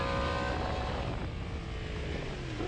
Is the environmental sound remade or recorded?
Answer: recorded